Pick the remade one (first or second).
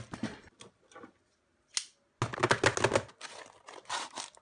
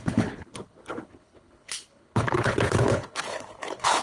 second